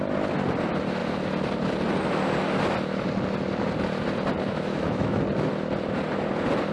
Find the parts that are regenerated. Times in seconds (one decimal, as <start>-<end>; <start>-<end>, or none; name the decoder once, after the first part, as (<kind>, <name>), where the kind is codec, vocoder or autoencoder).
4.5-5.2 (autoencoder, DAC-VAE)